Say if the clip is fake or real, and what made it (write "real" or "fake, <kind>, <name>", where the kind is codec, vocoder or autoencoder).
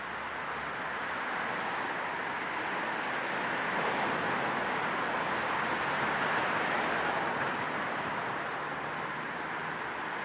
real